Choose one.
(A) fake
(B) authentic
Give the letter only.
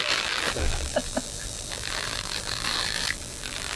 A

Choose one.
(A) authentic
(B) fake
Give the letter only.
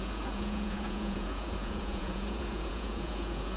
B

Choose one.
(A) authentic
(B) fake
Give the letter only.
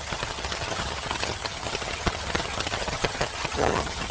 B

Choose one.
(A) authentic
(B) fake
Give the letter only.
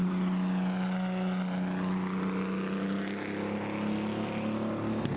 A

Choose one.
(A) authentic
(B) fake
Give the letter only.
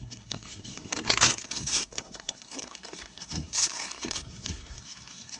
B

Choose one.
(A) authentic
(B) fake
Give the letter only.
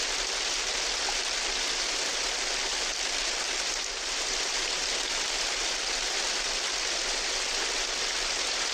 A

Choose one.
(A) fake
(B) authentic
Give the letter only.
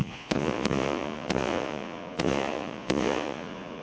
A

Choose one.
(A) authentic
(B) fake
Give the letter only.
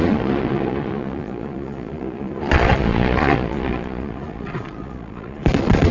B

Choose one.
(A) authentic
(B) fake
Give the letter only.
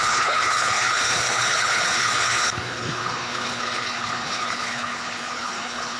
B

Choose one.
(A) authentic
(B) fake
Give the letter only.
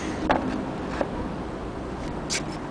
A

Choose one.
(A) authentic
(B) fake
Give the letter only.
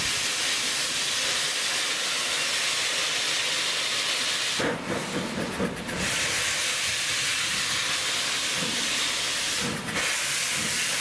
A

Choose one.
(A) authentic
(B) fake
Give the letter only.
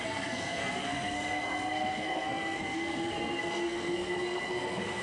B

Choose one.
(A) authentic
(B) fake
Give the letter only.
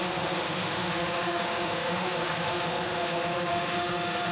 B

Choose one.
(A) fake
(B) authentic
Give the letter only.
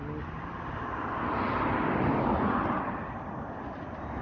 B